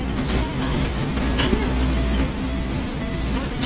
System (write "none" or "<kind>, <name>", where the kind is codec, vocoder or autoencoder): none